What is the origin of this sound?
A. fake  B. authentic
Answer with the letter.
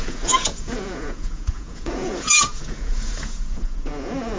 A